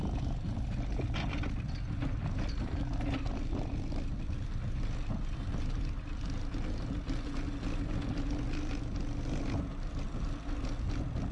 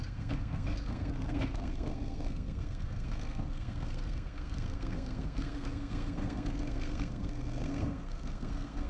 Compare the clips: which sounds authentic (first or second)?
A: first